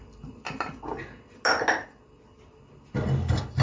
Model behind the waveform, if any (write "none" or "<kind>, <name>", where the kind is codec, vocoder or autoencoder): none